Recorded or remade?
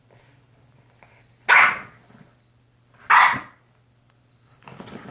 recorded